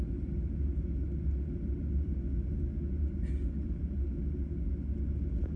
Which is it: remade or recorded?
recorded